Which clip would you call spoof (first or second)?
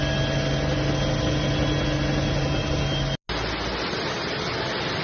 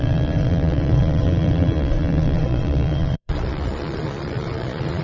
second